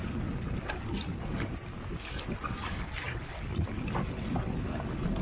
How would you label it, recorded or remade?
recorded